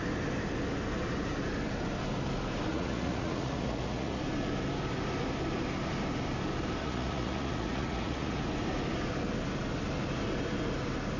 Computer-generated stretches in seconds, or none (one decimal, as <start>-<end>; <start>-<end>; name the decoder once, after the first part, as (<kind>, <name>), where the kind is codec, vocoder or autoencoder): 2.7-4.2 (vocoder, Vocos); 6.8-8.4